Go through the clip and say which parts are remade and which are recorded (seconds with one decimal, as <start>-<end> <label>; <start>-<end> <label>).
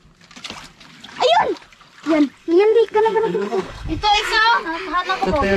0.0-2.4 recorded; 2.4-4.4 remade; 4.4-5.6 recorded